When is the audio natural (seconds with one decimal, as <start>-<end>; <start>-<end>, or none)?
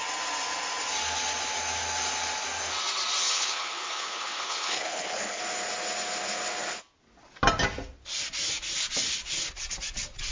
0.0-3.2; 5.4-10.3